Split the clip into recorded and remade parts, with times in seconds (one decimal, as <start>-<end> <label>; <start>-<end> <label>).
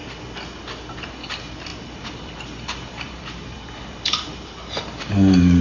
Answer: 0.0-1.7 recorded; 1.7-5.1 remade; 5.1-5.6 recorded